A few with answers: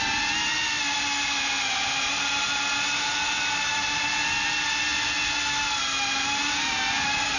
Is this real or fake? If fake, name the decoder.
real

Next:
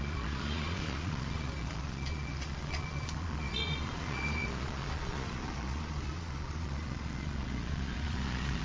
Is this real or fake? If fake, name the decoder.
fake, vocoder, Vocos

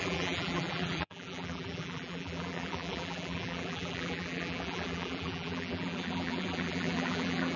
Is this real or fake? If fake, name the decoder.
fake, vocoder, BigVGAN v2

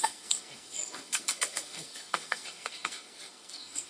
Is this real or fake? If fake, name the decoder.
fake, codec, SNAC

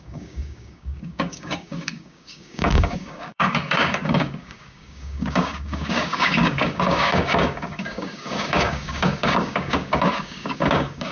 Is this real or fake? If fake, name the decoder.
fake, codec, DAC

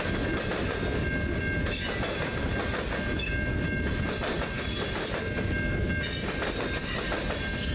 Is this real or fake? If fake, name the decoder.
real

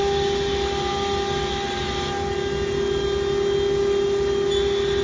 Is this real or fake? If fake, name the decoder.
real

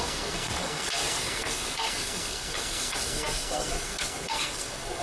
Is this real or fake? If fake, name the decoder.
fake, codec, SNAC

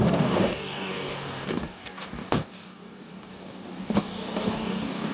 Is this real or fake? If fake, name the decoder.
fake, codec, DAC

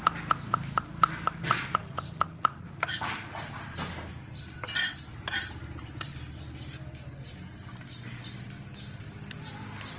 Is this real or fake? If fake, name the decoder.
real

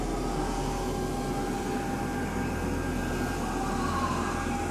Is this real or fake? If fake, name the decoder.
real